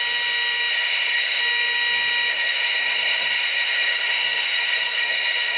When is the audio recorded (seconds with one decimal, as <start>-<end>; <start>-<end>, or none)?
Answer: 0.0-0.7; 1.4-2.3